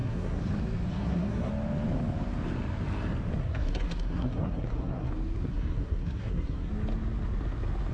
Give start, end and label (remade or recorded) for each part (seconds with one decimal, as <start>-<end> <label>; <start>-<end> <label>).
0.0-0.5 remade; 0.5-0.9 recorded; 0.9-1.5 remade; 1.5-3.4 recorded; 3.4-5.1 remade; 5.1-5.5 recorded; 5.5-6.7 remade; 6.7-7.9 recorded